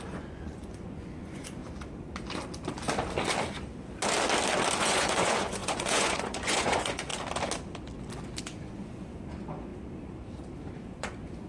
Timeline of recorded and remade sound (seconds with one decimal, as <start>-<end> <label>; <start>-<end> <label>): 0.0-1.6 remade; 1.6-4.8 recorded; 4.8-7.1 remade; 7.1-8.4 recorded; 8.4-9.7 remade; 9.7-10.7 recorded; 10.7-11.5 remade